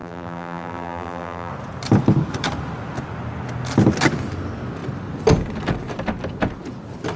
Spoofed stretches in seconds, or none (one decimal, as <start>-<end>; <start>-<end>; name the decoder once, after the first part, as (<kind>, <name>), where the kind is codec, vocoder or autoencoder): 0.0-1.5 (vocoder, BigVGAN v2)